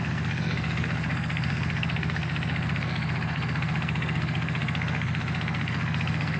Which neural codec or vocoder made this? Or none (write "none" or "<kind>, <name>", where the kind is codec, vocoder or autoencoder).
codec, SNAC